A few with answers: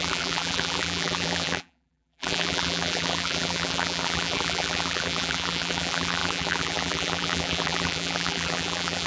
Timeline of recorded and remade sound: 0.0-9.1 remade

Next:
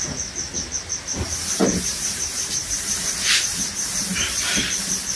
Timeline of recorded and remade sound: 0.0-1.6 recorded; 1.6-4.7 remade; 4.7-5.2 recorded

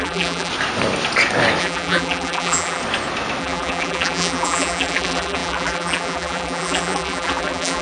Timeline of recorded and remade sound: 0.0-0.5 remade; 0.5-1.6 recorded; 1.6-2.8 remade; 2.8-3.4 recorded; 3.4-7.8 remade